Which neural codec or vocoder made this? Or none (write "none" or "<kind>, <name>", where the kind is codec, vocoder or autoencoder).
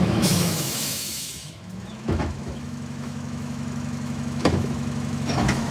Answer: autoencoder, DAC-VAE